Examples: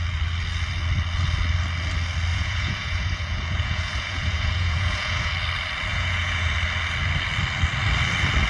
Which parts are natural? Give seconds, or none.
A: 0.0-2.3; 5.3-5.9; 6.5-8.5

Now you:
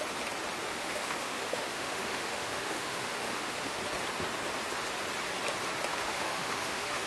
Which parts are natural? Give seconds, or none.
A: 0.0-0.7; 3.8-5.9

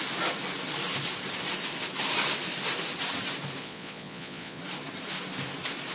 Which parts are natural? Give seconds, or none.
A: 0.0-3.6; 4.6-5.9